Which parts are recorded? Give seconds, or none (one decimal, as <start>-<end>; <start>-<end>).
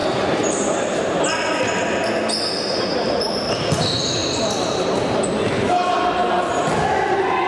1.2-4.2; 5.0-7.5